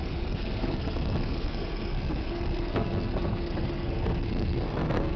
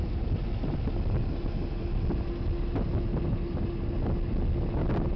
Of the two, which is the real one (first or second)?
second